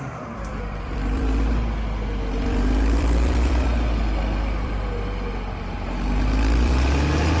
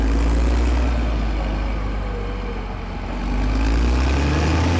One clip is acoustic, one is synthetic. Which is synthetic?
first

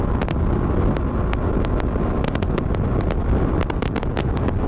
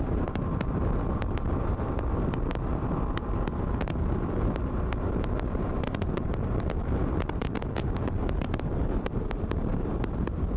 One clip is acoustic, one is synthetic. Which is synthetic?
second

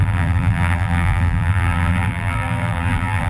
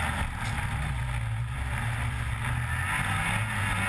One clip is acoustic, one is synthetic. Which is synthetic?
first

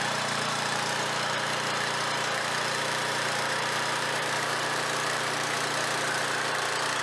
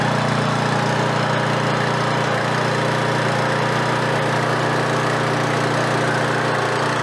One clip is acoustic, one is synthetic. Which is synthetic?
first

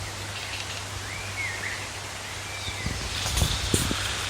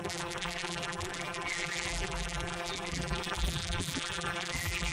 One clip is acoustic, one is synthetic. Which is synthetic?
second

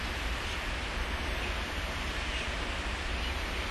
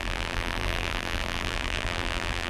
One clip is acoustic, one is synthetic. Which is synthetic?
second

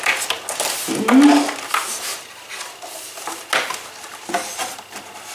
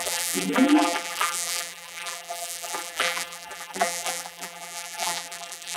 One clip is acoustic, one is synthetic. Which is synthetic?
second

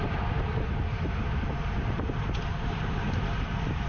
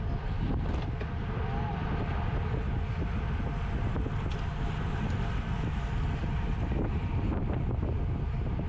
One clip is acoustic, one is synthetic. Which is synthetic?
first